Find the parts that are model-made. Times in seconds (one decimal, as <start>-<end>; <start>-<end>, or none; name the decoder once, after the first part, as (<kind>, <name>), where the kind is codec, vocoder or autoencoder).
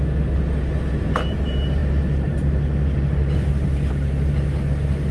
none